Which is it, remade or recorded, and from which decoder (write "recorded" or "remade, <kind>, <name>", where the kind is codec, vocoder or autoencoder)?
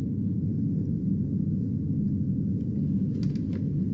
recorded